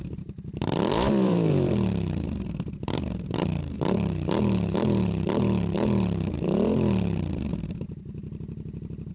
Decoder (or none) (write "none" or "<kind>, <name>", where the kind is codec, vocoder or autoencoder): vocoder, BigVGAN v2